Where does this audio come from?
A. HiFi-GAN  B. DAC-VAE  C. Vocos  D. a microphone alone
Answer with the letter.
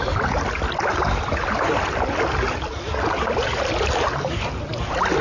D